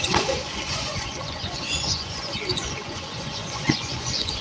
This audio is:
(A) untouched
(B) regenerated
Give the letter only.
B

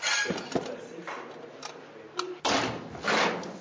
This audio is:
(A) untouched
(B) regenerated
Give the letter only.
A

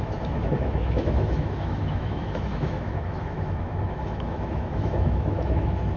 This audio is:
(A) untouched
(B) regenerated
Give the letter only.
B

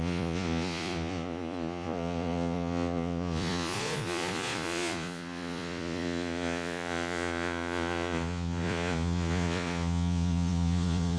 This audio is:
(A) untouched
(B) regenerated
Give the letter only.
B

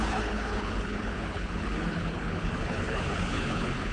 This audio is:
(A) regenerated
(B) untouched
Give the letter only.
A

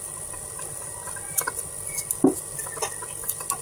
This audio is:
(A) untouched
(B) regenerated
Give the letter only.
A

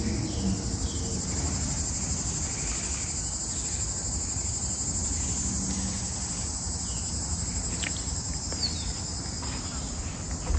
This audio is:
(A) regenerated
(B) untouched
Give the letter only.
B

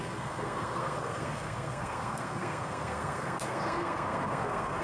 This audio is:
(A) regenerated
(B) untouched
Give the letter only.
A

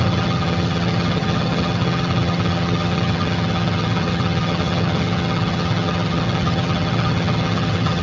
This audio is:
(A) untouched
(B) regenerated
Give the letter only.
B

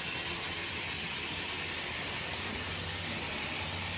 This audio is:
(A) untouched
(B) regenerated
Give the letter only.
A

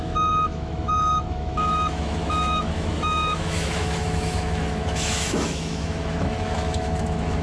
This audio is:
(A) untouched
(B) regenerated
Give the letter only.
B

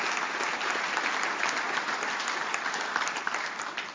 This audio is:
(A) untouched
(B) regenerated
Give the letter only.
A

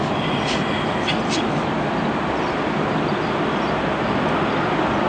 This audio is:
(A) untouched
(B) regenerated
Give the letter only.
A